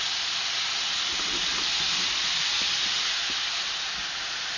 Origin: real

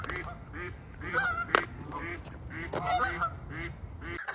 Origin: fake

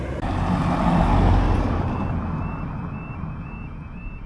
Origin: fake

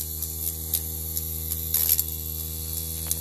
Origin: real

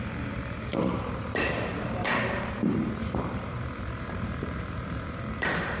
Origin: fake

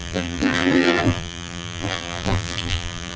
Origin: fake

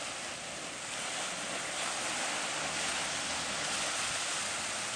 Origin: real